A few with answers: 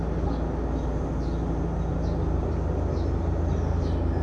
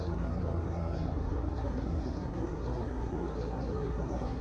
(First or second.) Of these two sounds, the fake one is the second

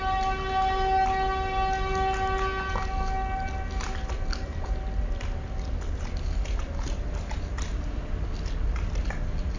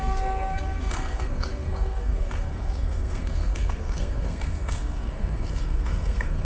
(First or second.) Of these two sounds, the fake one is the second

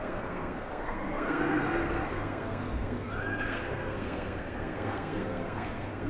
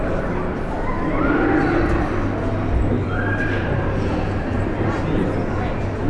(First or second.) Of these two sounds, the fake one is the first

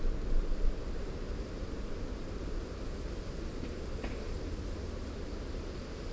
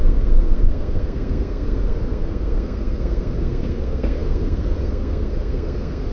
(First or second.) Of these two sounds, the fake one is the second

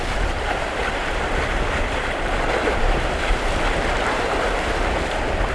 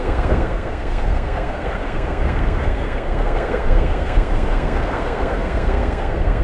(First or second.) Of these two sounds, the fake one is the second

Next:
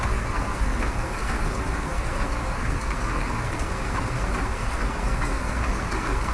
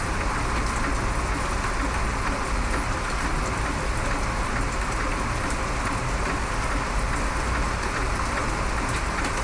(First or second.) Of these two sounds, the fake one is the first